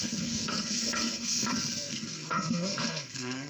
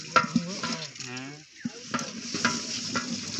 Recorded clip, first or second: second